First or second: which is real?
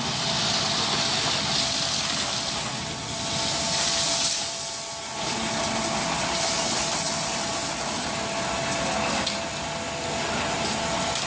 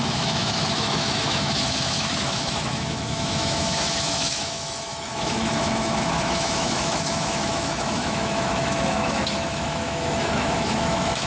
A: first